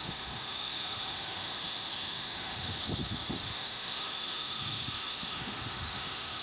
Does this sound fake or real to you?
fake